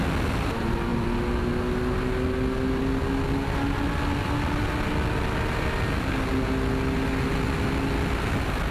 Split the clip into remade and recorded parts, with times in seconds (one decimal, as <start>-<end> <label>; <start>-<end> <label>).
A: 0.0-8.7 recorded